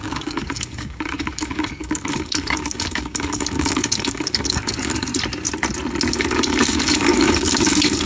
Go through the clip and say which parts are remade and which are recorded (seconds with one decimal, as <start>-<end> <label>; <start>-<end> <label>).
0.0-5.1 remade; 5.1-6.1 recorded; 6.1-8.1 remade